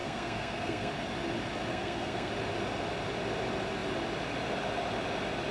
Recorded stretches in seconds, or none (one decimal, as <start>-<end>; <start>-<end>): 0.9-1.7; 2.3-5.5